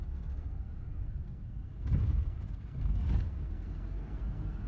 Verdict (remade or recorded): remade